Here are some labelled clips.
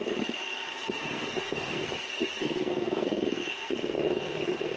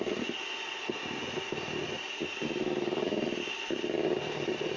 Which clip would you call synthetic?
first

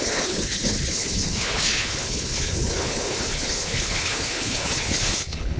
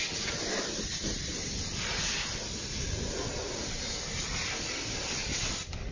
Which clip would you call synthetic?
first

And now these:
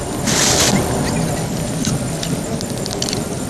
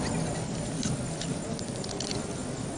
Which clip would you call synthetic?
first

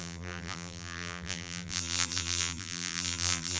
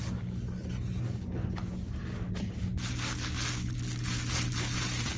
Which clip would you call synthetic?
first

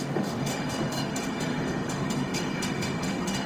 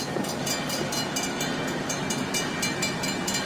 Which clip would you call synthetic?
first